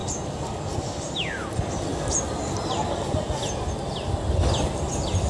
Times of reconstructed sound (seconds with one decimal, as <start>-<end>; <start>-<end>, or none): none